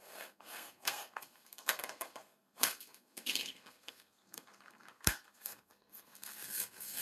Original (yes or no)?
no